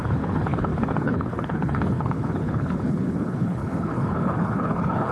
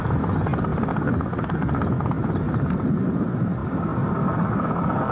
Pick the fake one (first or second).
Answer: first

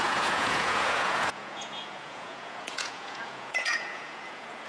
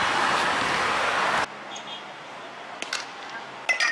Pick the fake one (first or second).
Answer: first